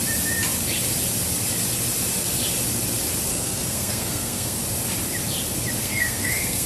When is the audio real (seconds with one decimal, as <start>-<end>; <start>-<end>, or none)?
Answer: 0.0-3.3; 4.6-5.8